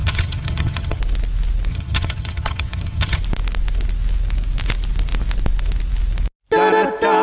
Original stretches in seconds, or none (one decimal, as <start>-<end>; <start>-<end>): 1.0-1.7; 3.2-7.2